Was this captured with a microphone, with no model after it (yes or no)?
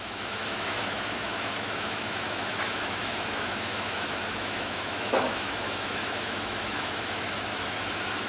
no